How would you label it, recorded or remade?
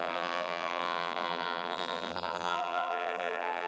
remade